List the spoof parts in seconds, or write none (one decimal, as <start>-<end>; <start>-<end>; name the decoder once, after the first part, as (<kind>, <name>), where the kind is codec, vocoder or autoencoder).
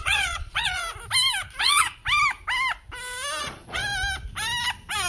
0.0-0.8 (vocoder, Vocos); 1.6-2.0; 3.4-3.8